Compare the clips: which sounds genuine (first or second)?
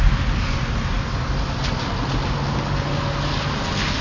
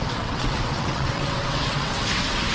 first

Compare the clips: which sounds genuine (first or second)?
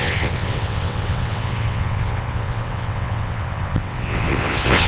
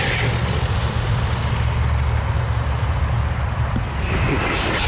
second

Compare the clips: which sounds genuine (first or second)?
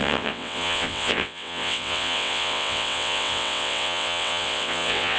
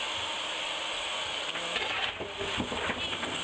second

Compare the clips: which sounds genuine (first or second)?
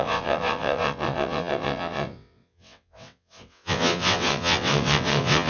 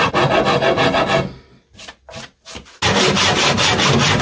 second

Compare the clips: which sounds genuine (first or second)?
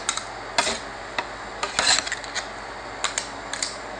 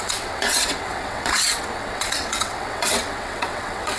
first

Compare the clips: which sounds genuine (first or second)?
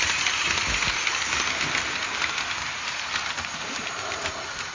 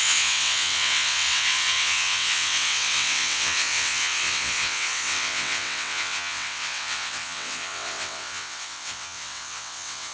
first